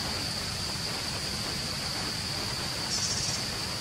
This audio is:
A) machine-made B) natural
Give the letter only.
B